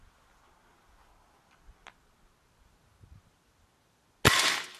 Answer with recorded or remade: recorded